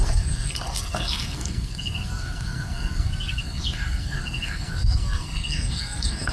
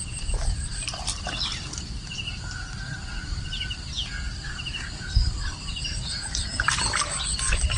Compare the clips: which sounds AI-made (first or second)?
first